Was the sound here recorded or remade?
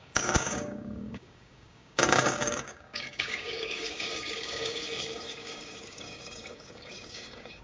remade